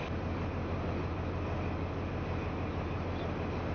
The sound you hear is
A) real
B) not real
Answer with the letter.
A